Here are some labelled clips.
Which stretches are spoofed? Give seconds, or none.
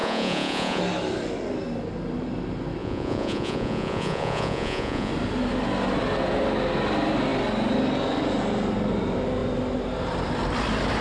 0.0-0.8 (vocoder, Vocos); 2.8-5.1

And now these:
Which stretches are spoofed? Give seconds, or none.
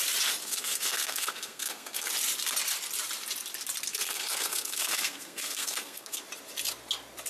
0.4-2.1 (codec, SNAC); 3.9-6.2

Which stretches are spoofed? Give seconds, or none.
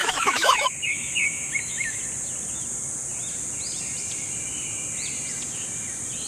0.0-2.0 (autoencoder, DAC-VAE)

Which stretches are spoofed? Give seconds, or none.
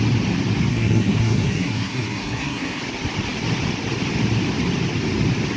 0.7-2.8 (codec, SNAC)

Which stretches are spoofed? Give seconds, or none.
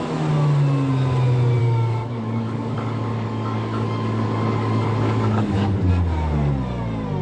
1.6-5.9 (codec, DAC)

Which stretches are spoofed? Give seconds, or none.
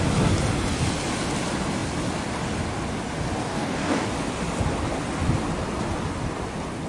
3.4-4.1 (codec, DAC)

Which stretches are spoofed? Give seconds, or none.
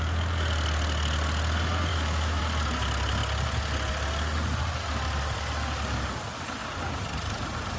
1.9-2.4 (autoencoder, DAC-VAE)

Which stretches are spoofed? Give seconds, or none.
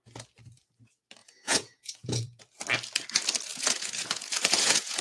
1.2-2.4 (vocoder, Vocos); 3.5-5.0